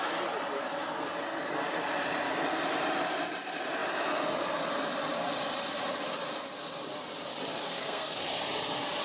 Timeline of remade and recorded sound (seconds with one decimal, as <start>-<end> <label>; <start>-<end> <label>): 0.0-7.6 recorded; 7.6-8.2 remade; 8.2-9.0 recorded